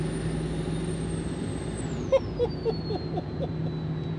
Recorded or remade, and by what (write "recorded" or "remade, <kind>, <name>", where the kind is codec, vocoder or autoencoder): recorded